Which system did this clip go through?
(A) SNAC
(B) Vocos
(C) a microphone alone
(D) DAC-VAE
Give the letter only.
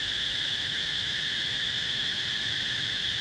D